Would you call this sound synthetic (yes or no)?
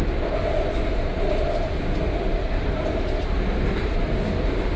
no